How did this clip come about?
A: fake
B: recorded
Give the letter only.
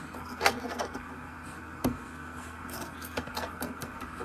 A